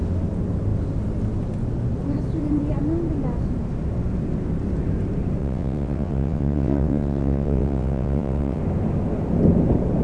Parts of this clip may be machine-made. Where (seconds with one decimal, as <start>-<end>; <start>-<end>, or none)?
5.4-8.6